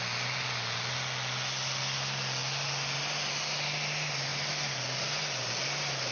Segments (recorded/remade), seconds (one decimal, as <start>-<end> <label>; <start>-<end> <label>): 0.0-6.1 recorded